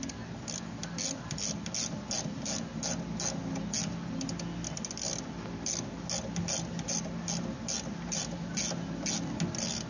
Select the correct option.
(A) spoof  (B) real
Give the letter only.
B